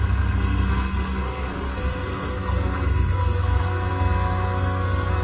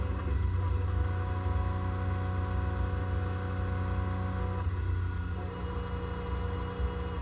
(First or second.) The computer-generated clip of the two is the first